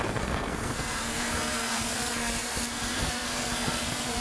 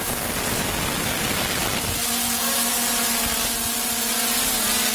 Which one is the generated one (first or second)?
first